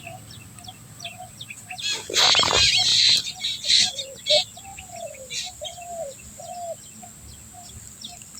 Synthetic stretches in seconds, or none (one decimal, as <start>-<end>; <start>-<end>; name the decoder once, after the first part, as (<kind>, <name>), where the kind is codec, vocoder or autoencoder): 2.9-3.8 (vocoder, BigVGAN v2); 4.7-6.4